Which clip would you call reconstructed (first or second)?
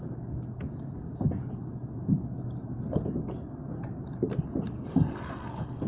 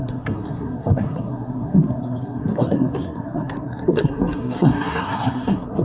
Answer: second